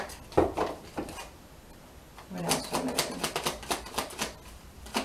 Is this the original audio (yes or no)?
yes